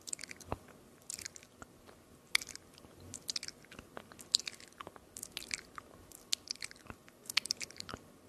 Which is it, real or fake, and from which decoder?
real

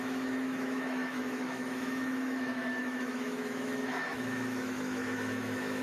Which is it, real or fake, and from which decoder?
fake, autoencoder, DAC-VAE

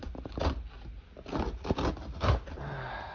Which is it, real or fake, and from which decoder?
real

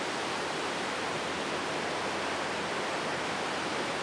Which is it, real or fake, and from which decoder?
real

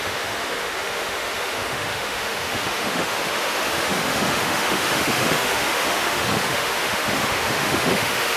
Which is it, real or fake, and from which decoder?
fake, autoencoder, DAC-VAE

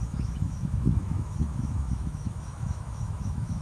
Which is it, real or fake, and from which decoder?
fake, autoencoder, DAC-VAE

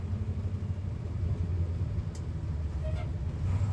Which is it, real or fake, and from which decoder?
real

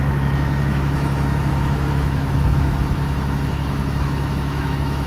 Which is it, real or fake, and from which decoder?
fake, autoencoder, DAC-VAE